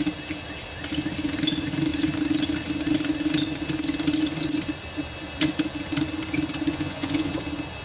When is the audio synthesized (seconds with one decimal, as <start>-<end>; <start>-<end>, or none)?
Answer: 6.7-7.3